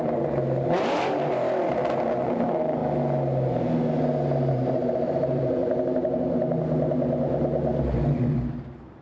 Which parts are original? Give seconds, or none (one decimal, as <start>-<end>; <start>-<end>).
1.8-2.3; 2.8-4.5; 5.6-6.9; 7.7-8.2